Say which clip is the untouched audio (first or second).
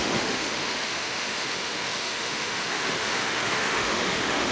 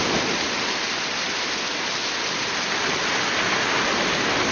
second